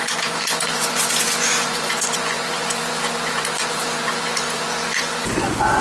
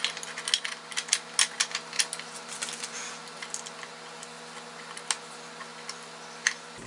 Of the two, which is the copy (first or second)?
first